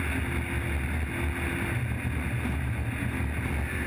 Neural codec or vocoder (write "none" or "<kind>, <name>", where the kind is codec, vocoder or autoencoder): none